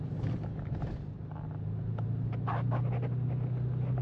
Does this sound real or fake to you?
real